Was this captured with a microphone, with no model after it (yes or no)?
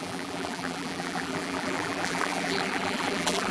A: no